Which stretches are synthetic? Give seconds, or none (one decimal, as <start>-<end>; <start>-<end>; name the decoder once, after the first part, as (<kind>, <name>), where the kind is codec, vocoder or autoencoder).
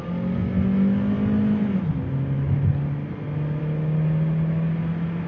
none